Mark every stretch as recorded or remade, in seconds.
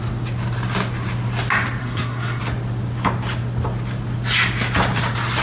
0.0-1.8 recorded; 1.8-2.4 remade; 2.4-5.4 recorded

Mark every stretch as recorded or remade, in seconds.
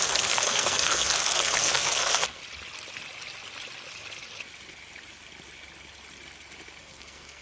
0.0-2.4 remade; 2.4-6.8 recorded; 6.8-7.4 remade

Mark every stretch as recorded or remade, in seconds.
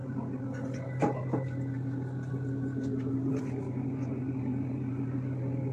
0.0-5.7 recorded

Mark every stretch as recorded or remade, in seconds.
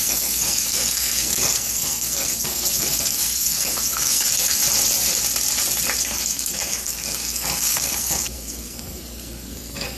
0.0-4.6 remade; 4.6-6.0 recorded; 6.0-10.0 remade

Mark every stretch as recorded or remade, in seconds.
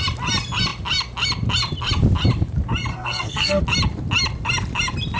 0.0-2.9 recorded; 2.9-3.6 remade; 3.6-5.2 recorded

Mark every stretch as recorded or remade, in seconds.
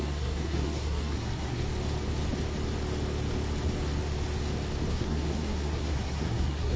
0.0-1.6 remade; 1.6-4.9 recorded; 4.9-6.8 remade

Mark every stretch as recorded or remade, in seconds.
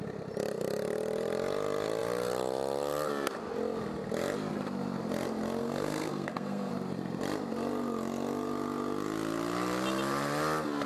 0.0-5.6 recorded; 5.6-6.7 remade; 6.7-10.9 recorded